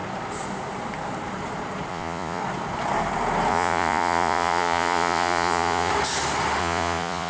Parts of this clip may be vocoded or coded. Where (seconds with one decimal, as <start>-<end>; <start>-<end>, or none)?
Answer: 1.9-2.4; 3.5-5.9; 6.6-7.3